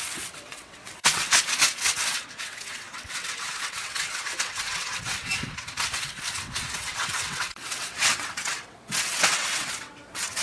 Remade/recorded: remade